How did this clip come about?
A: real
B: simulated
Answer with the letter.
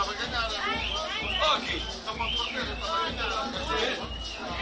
A